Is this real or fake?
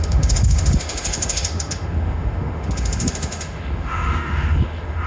fake